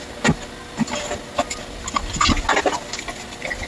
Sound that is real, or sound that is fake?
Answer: real